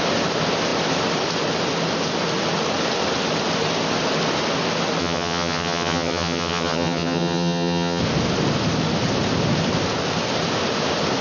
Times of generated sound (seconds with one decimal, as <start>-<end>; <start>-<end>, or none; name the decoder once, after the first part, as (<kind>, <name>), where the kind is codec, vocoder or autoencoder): 5.0-8.0 (vocoder, HiFi-GAN)